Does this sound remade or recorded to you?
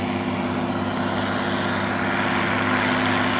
recorded